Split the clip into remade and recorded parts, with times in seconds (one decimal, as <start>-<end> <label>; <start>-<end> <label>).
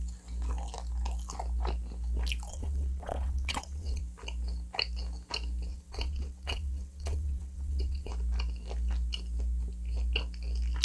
0.0-2.5 recorded; 2.5-4.0 remade; 4.0-5.7 recorded; 5.7-8.1 remade; 8.1-10.8 recorded